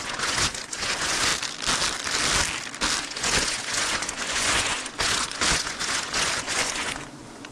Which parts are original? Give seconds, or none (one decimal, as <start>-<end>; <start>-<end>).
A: 1.3-3.0